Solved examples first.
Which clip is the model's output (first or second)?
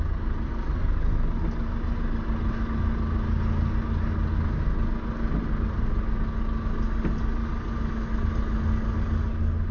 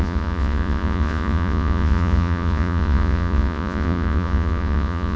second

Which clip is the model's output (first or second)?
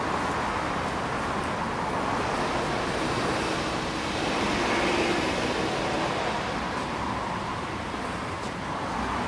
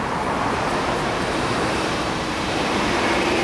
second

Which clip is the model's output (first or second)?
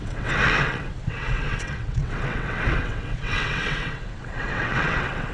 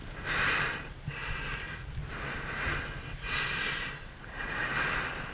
first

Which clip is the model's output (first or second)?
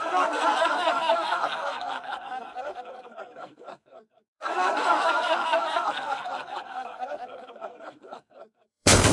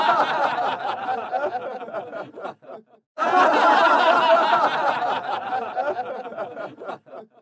first